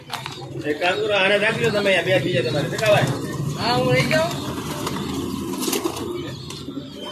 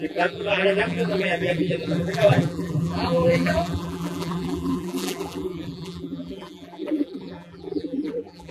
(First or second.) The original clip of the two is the first